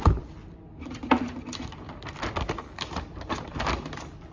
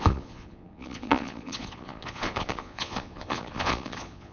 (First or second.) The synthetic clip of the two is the second